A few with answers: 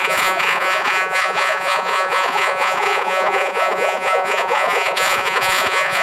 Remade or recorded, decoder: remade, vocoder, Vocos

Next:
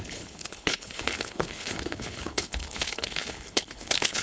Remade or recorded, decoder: remade, codec, HILCodec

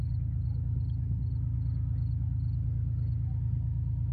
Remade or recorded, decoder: recorded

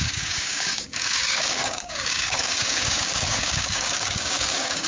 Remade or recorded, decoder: remade, codec, DAC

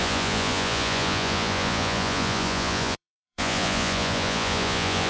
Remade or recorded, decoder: remade, vocoder, Vocos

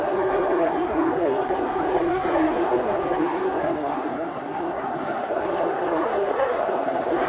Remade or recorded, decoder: remade, codec, SNAC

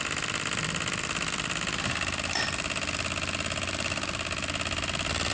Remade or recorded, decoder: recorded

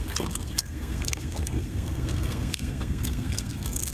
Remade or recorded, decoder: remade, codec, SNAC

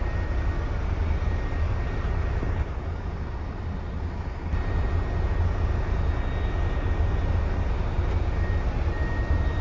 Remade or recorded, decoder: recorded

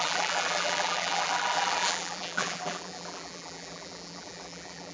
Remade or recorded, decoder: remade, vocoder, BigVGAN v2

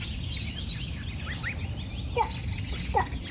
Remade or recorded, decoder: recorded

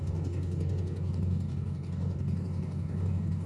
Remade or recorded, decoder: remade, codec, DAC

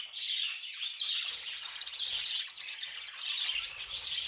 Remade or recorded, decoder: recorded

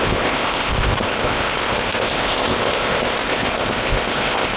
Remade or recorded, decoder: remade, codec, ZipCodec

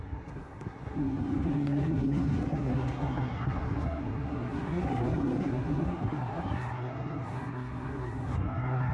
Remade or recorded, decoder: remade, codec, SNAC